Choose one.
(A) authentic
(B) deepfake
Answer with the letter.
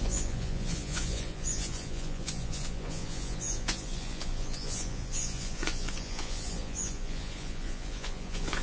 B